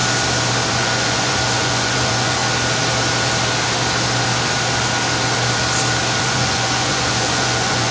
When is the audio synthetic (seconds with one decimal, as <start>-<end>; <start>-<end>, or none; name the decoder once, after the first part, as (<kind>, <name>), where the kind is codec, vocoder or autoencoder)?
0.7-2.4 (vocoder, Vocos); 6.2-7.9